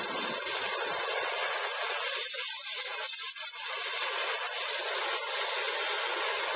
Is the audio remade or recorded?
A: recorded